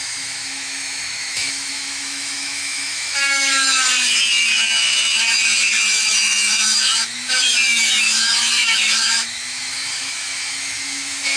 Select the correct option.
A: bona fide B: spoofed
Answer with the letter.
B